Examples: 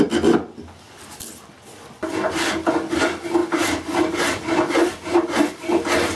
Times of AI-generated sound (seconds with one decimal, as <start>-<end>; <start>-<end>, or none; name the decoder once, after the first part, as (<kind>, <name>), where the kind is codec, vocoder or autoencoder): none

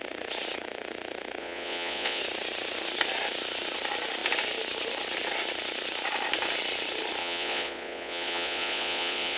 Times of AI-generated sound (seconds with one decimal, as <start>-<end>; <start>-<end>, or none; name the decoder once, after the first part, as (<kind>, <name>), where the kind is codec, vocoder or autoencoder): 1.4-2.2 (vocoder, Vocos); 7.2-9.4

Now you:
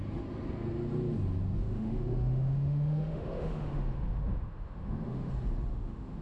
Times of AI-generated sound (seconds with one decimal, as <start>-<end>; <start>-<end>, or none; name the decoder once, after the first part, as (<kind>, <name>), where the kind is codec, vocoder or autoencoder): 1.6-5.3 (autoencoder, DAC-VAE); 5.7-6.2

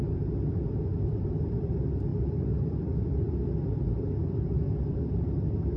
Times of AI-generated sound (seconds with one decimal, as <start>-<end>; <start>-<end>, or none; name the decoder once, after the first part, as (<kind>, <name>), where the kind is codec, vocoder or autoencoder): none

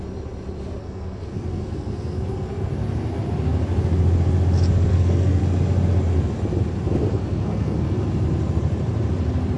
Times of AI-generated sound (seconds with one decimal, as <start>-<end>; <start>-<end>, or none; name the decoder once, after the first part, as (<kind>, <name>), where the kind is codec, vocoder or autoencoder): 0.8-2.7 (codec, SNAC); 4.9-5.4; 7.1-8.1

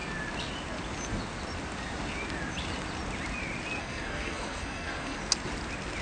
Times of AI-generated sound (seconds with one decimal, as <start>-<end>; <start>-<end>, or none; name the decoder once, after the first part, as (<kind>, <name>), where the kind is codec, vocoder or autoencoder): 3.8-5.2 (codec, SNAC)

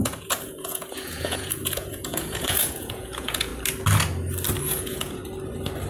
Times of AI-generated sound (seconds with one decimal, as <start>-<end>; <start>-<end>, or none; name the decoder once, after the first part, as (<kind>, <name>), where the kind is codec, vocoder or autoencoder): 0.0-3.5 (vocoder, Vocos); 4.6-5.2

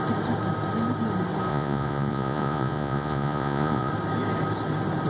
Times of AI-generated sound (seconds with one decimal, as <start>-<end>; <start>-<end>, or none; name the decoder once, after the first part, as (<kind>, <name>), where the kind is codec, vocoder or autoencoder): 1.5-3.9 (vocoder, Vocos)